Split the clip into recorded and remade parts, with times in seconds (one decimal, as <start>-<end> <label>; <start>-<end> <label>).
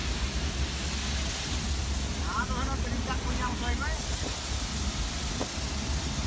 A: 0.0-6.3 recorded